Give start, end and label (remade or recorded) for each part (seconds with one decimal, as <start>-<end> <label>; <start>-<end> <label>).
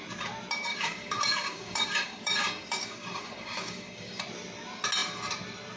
0.0-0.7 recorded; 0.7-4.2 remade; 4.2-5.8 recorded